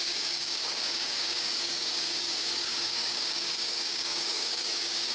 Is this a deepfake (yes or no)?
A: yes